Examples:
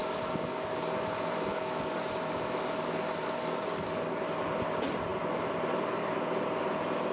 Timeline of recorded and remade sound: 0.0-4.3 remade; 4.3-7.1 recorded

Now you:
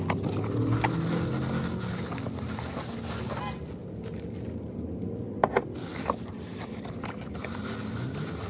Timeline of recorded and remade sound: 0.0-8.5 recorded

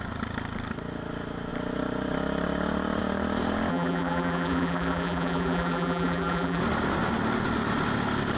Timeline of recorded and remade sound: 0.0-3.7 recorded; 3.7-6.6 remade; 6.6-8.4 recorded

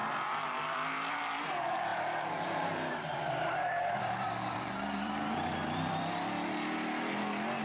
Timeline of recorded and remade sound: 0.0-1.9 recorded; 1.9-6.3 remade; 6.3-7.6 recorded

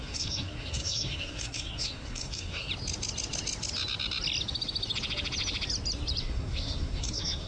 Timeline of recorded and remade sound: 0.0-2.7 remade; 2.7-6.2 recorded; 6.2-7.5 remade

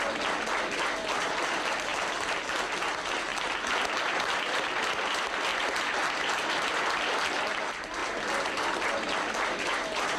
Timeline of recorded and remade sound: 0.0-1.9 remade; 1.9-2.7 recorded; 2.7-3.3 remade; 3.3-4.0 recorded; 4.0-5.5 remade; 5.5-6.2 recorded; 6.2-10.2 remade